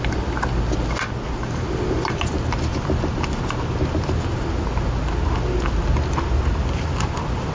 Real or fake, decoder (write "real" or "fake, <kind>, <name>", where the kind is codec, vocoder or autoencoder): real